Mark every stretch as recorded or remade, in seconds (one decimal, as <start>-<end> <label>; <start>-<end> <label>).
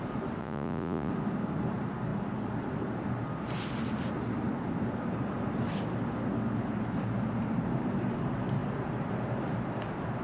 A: 0.0-0.4 recorded; 0.4-1.1 remade; 1.1-10.2 recorded